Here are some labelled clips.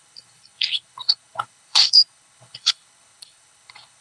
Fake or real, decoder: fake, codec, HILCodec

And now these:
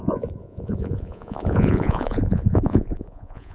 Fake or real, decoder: fake, vocoder, Vocos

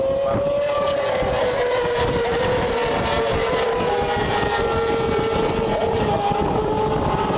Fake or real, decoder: real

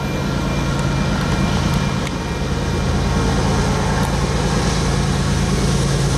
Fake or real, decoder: real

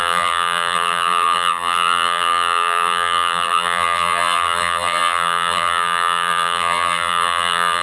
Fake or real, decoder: fake, vocoder, BigVGAN v2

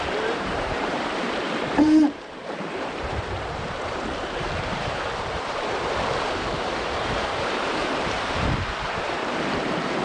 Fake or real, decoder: fake, vocoder, BigVGAN v2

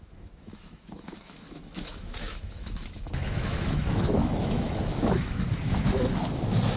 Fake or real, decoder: fake, autoencoder, DAC-VAE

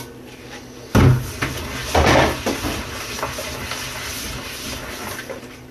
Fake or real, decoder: real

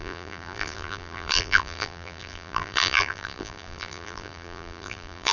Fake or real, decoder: fake, vocoder, BigVGAN v2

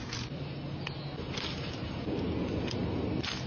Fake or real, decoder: real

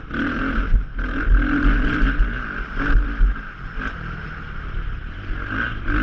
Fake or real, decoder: real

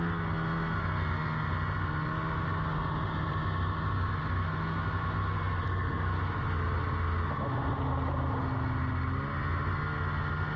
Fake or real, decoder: real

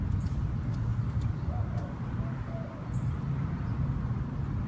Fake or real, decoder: real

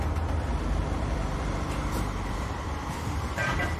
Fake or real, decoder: fake, vocoder, BigVGAN v2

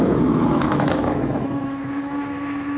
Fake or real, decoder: fake, autoencoder, DAC-VAE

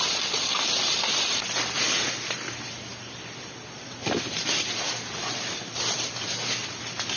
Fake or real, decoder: real